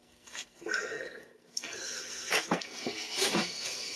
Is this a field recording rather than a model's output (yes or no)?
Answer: no